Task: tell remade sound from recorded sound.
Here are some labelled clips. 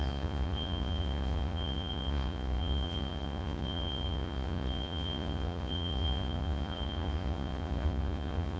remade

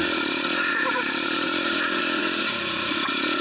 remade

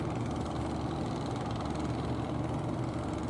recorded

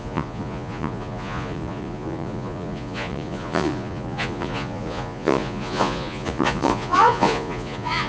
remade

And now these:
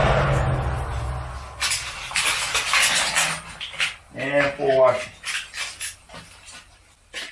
recorded